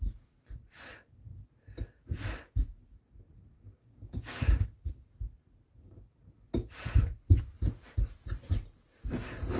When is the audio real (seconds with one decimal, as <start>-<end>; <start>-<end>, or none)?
0.0-3.5; 4.9-9.6